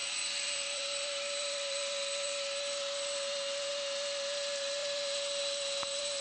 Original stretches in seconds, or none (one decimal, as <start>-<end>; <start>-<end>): none